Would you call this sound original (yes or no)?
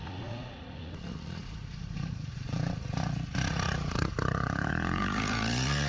no